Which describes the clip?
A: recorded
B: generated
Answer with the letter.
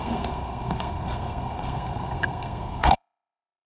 B